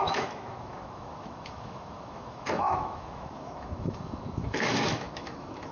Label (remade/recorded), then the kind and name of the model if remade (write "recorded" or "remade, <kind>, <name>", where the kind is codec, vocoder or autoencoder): remade, autoencoder, DAC-VAE